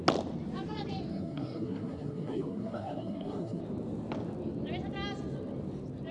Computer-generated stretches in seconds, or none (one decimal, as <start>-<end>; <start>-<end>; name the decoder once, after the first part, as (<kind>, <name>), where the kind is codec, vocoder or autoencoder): 1.1-3.6 (codec, SNAC)